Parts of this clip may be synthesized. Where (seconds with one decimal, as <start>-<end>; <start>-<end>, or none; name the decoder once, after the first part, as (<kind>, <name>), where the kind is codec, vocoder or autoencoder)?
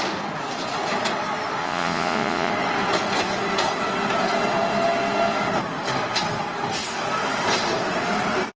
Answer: 1.6-2.5 (vocoder, Vocos)